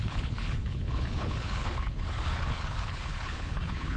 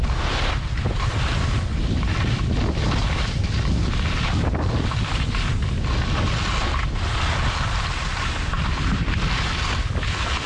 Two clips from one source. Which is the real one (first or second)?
second